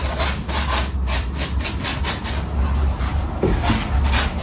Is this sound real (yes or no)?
yes